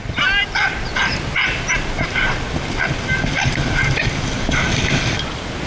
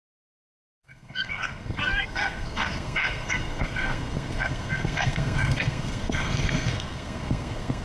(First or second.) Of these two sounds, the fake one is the second